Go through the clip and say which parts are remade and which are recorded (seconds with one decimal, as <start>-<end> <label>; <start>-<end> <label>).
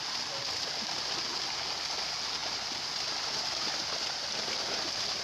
0.0-5.2 recorded